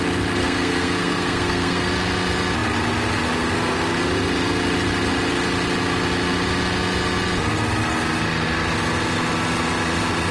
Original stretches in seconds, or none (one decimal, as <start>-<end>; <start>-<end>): 0.0-0.4; 1.9-10.3